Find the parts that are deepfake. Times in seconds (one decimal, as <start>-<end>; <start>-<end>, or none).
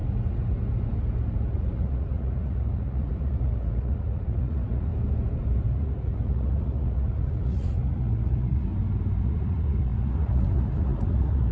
1.5-4.9; 5.7-8.7; 9.2-11.5